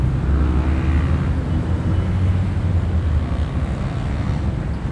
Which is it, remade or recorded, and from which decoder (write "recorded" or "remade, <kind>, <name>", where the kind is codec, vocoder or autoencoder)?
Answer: recorded